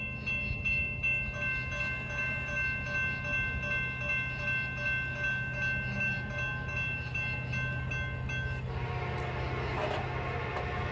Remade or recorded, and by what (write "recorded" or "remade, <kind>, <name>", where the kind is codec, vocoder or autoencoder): recorded